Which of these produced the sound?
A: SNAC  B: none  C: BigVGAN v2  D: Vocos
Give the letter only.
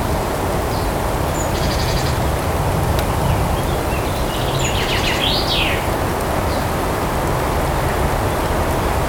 B